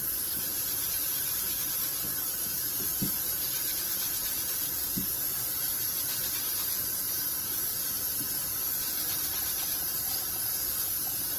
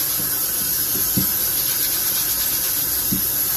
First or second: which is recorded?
second